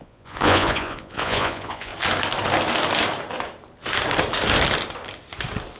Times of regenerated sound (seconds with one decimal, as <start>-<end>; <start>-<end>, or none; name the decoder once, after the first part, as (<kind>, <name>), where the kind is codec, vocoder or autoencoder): 0.0-1.9 (vocoder, Vocos)